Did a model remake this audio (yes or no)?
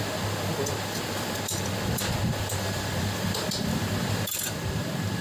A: no